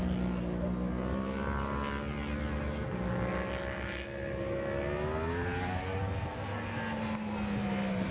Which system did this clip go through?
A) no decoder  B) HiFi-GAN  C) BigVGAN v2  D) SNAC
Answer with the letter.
A